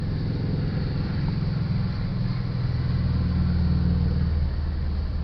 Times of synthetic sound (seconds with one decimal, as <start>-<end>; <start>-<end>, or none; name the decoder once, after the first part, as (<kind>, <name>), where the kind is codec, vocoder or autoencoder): 0.0-2.1 (vocoder, BigVGAN v2); 4.8-5.2